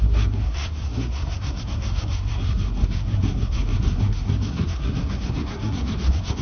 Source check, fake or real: fake